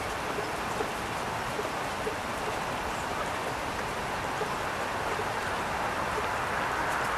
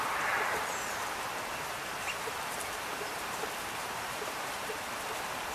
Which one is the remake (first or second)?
second